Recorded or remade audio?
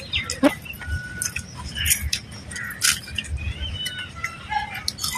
recorded